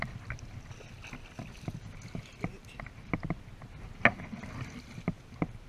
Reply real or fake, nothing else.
real